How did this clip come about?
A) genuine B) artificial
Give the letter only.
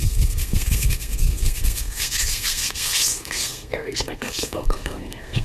B